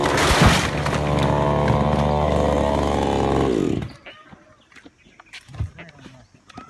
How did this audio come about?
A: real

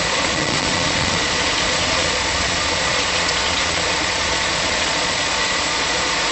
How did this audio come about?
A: fake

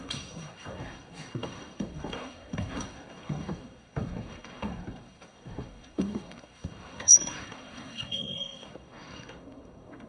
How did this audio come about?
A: fake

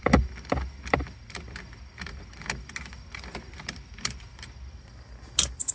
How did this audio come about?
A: real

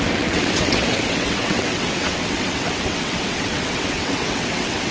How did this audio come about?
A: fake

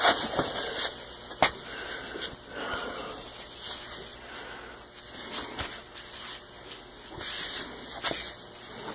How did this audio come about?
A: real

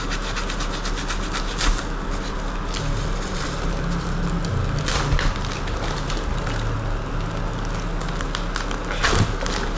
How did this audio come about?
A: real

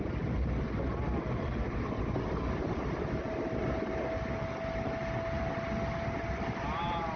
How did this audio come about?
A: real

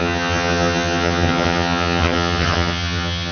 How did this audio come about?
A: fake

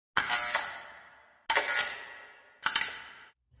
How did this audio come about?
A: real